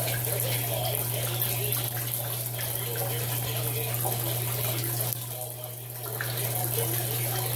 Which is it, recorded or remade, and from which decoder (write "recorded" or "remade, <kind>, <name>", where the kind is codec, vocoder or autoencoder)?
recorded